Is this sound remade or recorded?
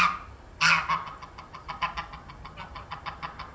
recorded